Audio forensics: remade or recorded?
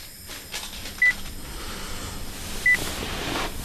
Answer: recorded